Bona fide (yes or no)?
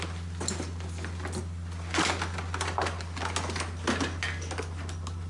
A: yes